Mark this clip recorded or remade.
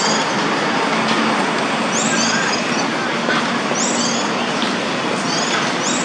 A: recorded